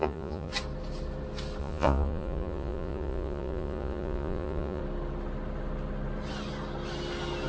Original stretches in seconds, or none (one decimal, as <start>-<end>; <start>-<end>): 0.5-1.6; 4.8-7.5